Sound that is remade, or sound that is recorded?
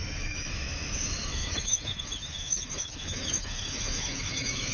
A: remade